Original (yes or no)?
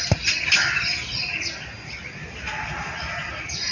yes